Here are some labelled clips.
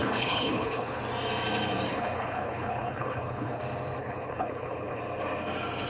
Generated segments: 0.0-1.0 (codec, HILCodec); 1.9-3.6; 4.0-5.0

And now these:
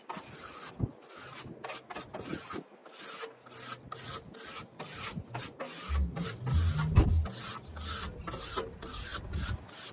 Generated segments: none